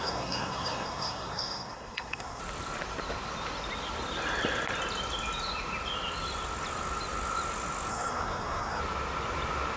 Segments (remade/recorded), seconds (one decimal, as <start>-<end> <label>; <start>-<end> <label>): 0.0-2.4 remade; 2.4-7.9 recorded; 7.9-8.8 remade; 8.8-9.8 recorded